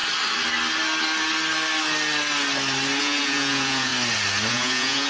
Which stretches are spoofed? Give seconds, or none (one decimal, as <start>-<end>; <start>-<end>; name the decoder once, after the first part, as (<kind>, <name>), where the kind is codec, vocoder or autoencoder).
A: 3.0-3.9 (vocoder, Vocos); 4.5-5.1